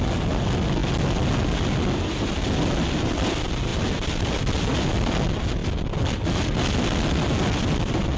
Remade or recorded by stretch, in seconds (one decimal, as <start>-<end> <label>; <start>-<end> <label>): 0.0-8.2 recorded